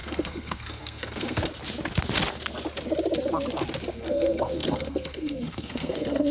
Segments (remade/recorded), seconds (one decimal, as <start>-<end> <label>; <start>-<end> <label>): 0.0-1.4 remade; 1.4-3.9 recorded; 3.9-6.3 remade